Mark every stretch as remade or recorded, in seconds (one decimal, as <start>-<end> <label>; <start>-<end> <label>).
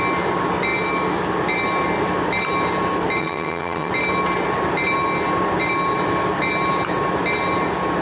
0.0-3.2 recorded; 3.2-3.9 remade; 3.9-8.0 recorded